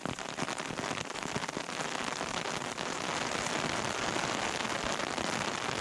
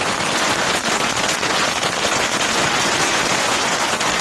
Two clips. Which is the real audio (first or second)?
first